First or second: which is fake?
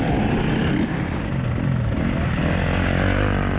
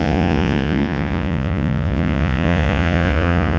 second